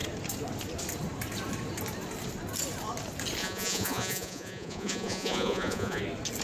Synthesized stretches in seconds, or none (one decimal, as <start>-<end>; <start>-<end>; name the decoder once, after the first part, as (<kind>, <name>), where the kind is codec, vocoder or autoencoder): 3.4-6.0 (vocoder, Vocos)